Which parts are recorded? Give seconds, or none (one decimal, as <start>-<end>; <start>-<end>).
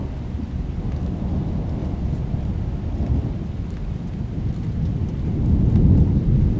0.0-6.6